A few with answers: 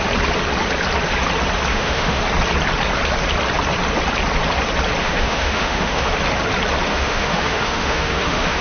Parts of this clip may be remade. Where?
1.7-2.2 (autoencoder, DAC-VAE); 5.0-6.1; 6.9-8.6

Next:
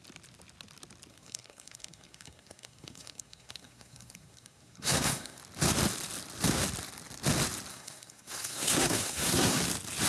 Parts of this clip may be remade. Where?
1.1-5.4 (codec, SNAC); 7.7-9.6